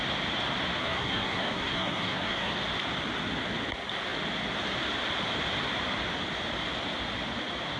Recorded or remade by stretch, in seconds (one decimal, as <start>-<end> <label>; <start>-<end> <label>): 0.0-0.8 recorded; 0.8-2.5 remade; 2.5-7.8 recorded